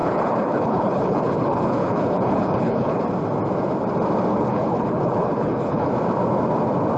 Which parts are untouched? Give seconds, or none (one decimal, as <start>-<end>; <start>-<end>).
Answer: 3.0-4.3; 5.9-7.0

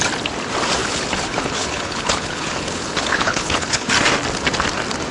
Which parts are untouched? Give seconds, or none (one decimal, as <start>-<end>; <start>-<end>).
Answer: 0.0-0.8; 3.9-5.1

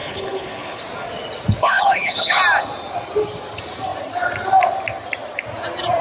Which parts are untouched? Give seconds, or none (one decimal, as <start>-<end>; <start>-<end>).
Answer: 0.8-1.6; 2.4-6.0

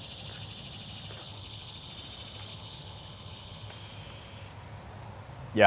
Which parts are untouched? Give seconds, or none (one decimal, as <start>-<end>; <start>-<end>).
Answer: 0.0-1.2; 1.9-2.5; 3.7-5.7

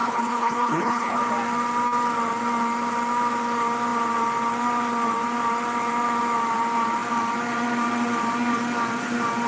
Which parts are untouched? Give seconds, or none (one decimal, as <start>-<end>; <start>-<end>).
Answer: 1.2-9.5

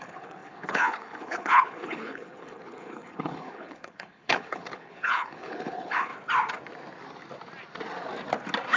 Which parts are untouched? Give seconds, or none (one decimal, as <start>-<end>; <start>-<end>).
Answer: 6.1-8.8

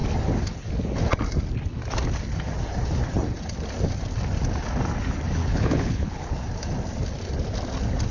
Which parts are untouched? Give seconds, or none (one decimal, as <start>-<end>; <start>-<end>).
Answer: 0.0-5.4; 6.3-8.1